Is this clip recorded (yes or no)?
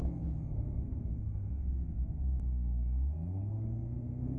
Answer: no